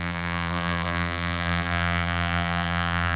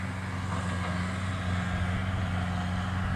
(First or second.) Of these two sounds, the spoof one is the first